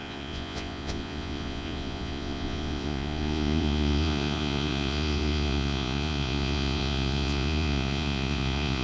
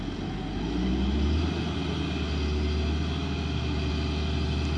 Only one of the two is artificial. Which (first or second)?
first